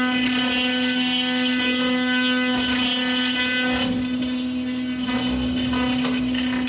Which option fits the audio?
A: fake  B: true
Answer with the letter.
B